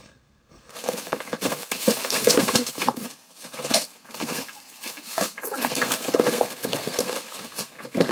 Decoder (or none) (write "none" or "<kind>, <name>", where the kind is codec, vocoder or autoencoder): codec, SNAC